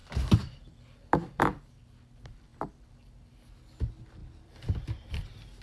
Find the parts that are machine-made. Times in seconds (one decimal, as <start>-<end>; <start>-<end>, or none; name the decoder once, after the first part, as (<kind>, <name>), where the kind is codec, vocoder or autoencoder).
0.0-1.4 (vocoder, BigVGAN v2); 2.5-3.3; 4.2-5.6